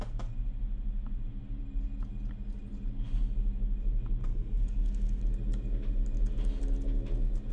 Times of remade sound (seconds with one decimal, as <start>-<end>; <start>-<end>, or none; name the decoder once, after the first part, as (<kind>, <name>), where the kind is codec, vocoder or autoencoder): 4.2-5.2 (codec, SNAC)